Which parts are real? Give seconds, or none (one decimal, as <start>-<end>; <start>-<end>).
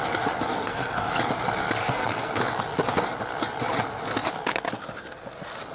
0.0-0.5; 1.1-1.8; 2.4-5.7